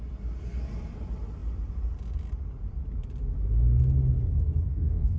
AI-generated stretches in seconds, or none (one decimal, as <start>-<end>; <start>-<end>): 4.7-5.2